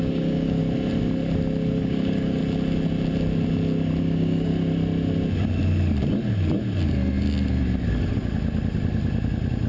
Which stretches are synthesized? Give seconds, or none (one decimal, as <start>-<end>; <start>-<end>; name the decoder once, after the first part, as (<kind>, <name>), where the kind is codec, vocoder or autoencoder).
0.0-0.6 (codec, DAC); 1.8-2.4; 4.0-4.5